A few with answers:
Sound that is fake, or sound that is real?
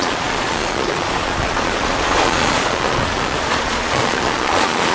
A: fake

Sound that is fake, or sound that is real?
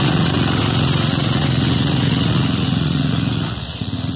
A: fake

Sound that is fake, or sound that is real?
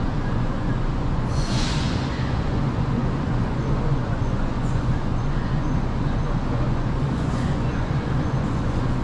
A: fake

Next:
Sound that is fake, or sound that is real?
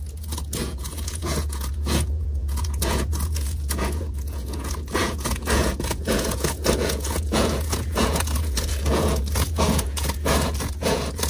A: fake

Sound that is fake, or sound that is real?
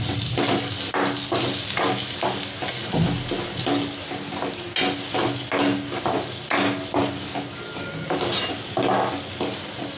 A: real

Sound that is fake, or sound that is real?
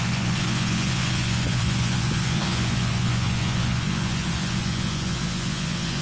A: fake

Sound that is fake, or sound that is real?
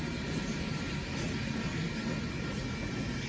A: real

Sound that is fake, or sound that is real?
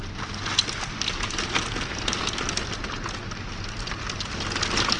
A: real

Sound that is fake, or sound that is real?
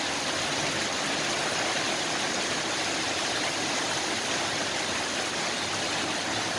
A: real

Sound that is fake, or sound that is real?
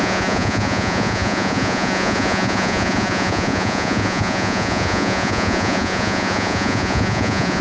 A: fake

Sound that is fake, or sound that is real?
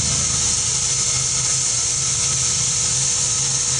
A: real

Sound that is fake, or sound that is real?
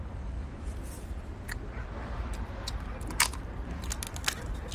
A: real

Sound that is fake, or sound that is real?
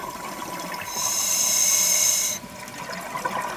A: real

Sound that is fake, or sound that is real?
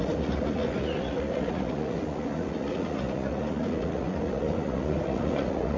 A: fake